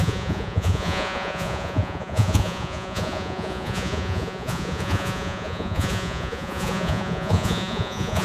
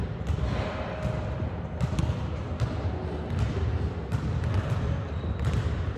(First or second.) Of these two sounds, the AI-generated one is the first